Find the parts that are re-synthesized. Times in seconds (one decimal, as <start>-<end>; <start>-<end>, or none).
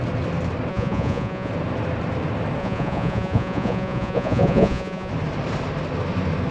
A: 0.7-1.5; 2.6-5.1